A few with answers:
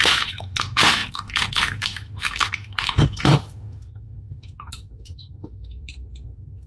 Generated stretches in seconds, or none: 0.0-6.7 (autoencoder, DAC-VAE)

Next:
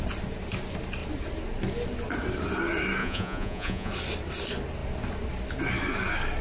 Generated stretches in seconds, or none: 3.0-3.9 (vocoder, Vocos)

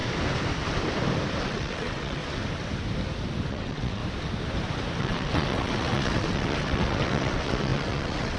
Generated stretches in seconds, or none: 1.4-2.2 (vocoder, WaveNeXt); 3.5-4.0; 5.0-8.4

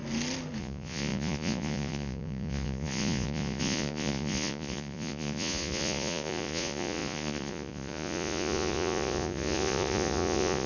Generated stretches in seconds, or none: 0.6-10.7 (vocoder, Vocos)

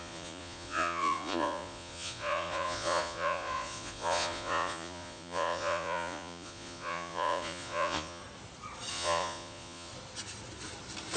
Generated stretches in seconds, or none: 0.0-8.2 (vocoder, Vocos); 8.9-9.9